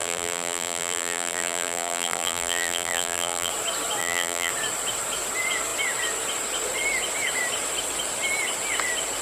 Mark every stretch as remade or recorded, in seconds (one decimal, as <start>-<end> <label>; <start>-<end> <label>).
0.0-3.5 remade; 3.5-4.0 recorded; 4.0-4.5 remade; 4.5-9.2 recorded